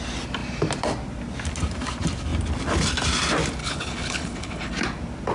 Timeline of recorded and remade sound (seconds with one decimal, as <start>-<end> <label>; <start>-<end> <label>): 0.0-3.6 recorded; 3.6-4.7 remade; 4.7-5.3 recorded